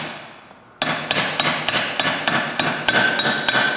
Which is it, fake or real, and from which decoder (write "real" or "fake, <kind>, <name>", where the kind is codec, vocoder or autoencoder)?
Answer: real